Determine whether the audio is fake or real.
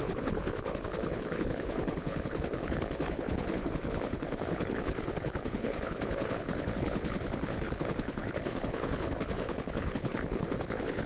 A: fake